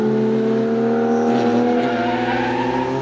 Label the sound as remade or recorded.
recorded